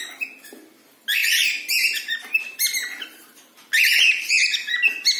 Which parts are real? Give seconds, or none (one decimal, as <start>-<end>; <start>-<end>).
0.0-1.2; 4.3-5.2